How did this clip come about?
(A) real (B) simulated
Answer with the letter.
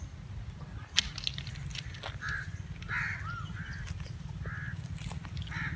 A